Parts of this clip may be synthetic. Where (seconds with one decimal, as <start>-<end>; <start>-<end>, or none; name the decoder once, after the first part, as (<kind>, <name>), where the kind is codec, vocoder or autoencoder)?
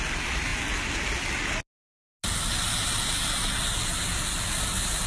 none